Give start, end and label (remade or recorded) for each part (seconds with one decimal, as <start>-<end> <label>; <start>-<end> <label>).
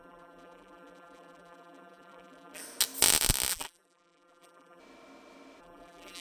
0.0-2.6 remade; 2.6-3.5 recorded; 3.5-4.8 remade; 4.8-5.6 recorded; 5.6-6.2 remade